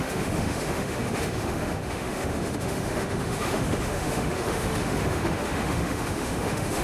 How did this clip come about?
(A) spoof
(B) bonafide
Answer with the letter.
A